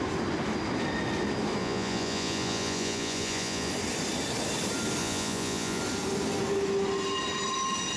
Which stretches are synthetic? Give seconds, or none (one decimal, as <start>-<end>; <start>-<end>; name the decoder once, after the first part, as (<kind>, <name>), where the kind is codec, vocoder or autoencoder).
1.6-3.7 (vocoder, Vocos); 5.0-5.8